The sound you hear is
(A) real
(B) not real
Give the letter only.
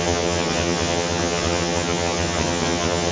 B